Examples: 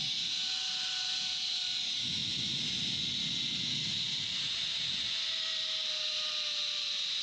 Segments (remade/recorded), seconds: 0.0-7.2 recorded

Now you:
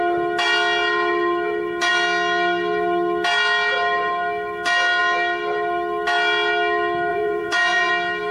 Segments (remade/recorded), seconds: 0.0-7.1 recorded; 7.1-7.9 remade; 7.9-8.3 recorded